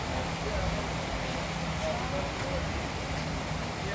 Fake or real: real